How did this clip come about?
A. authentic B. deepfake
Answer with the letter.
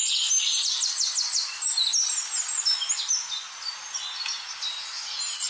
A